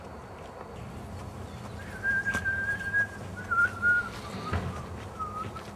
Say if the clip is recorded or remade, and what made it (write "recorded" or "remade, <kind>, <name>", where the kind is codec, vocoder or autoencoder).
recorded